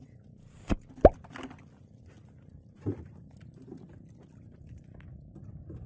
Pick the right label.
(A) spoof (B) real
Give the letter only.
B